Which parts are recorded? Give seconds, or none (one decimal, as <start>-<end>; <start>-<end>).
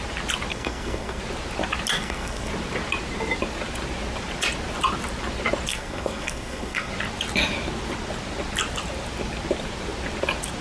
0.0-0.5; 1.2-1.9; 2.5-5.7; 6.9-10.6